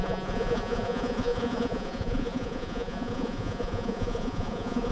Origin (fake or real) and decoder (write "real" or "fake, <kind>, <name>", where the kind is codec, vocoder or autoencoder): fake, vocoder, Vocos